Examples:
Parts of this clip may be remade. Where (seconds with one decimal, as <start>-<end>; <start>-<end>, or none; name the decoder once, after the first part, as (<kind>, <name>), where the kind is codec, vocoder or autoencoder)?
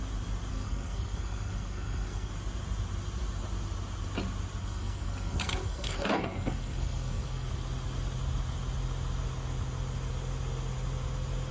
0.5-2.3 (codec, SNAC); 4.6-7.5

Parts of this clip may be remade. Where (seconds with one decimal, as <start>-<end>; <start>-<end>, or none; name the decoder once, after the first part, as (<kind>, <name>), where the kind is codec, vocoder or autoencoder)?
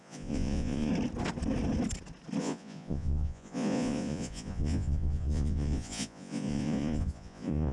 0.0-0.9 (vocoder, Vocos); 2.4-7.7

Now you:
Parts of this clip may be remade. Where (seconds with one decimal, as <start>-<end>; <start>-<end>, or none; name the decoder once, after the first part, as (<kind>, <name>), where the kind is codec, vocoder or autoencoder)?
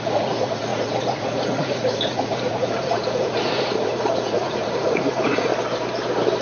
0.0-5.5 (vocoder, Vocos)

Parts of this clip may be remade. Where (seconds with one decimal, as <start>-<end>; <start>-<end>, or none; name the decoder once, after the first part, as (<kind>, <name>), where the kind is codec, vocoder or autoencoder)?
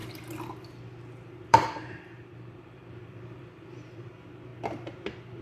1.5-4.5 (vocoder, BigVGAN v2)